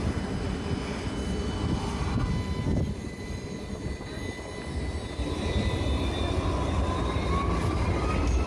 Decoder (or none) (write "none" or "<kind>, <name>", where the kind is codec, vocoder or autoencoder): none